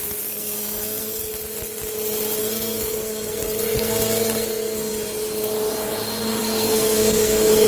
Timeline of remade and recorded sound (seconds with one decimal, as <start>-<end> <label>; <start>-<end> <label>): 0.0-1.3 remade; 1.3-2.4 recorded; 2.4-4.9 remade; 4.9-6.4 recorded; 6.4-7.7 remade